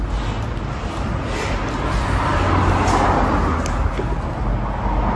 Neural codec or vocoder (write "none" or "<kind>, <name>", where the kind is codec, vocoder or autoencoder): none